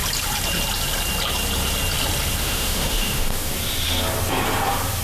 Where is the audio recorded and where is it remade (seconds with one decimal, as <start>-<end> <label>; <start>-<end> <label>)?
0.0-2.4 recorded; 2.4-3.5 remade; 3.5-5.0 recorded